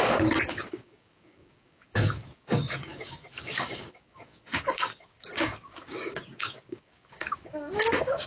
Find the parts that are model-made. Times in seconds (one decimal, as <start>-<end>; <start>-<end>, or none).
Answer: 0.0-8.3